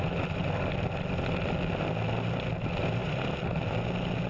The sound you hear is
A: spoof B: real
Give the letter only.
B